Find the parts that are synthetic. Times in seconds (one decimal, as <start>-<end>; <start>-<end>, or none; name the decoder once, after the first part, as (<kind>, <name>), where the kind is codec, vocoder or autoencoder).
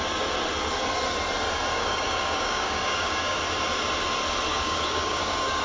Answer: 1.7-3.4 (codec, DAC); 4.5-5.6